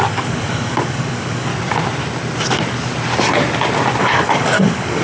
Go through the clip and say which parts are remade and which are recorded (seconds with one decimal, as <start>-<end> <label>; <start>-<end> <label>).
0.0-1.5 remade; 1.5-4.0 recorded; 4.0-5.0 remade